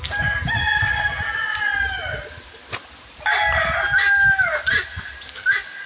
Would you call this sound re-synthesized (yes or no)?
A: no